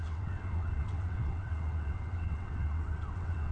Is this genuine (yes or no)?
no